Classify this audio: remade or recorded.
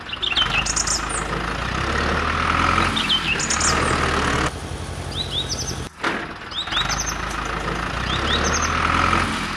recorded